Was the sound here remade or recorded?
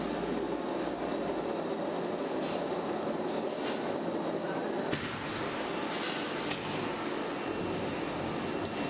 recorded